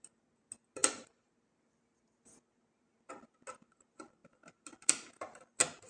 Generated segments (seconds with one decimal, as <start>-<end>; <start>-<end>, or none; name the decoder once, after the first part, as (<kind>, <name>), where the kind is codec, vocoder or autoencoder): none